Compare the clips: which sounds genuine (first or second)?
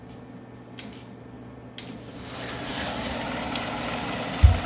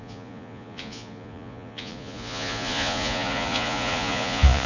first